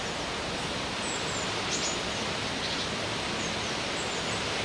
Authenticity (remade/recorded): recorded